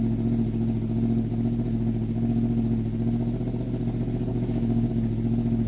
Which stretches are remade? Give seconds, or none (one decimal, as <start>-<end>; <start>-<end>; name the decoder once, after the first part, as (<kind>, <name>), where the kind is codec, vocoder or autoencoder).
4.3-4.9 (codec, DAC)